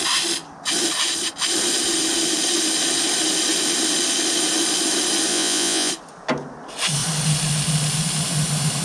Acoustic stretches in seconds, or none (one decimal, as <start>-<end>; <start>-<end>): 0.0-5.3; 5.9-8.8